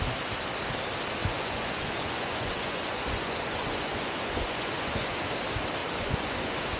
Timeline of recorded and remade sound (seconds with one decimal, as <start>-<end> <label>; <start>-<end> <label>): 0.0-1.2 recorded; 1.2-5.2 remade; 5.2-5.8 recorded; 5.8-6.8 remade

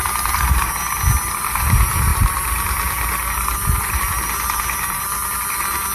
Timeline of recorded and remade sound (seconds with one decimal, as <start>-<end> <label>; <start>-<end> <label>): 0.0-5.9 recorded

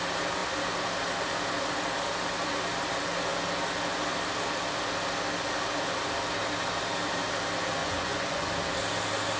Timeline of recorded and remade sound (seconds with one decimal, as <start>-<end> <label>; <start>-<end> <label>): 0.0-7.8 recorded; 7.8-8.5 remade; 8.5-9.4 recorded

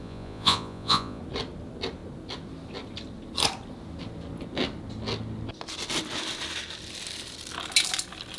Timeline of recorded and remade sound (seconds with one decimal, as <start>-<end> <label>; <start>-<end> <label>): 0.0-1.2 remade; 1.2-8.4 recorded